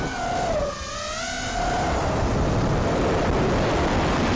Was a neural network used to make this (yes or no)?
no